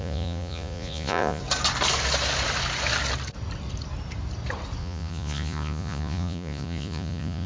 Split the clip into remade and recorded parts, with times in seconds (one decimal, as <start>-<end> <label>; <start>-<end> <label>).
0.0-1.4 remade; 1.4-4.8 recorded; 4.8-7.5 remade